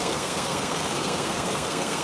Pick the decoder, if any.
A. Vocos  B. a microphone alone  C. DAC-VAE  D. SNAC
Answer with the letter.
D